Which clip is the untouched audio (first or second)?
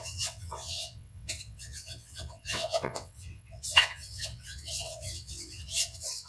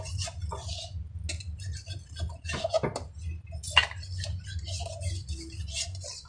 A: second